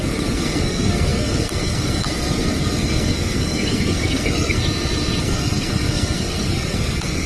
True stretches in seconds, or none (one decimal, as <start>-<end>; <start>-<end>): 4.6-5.2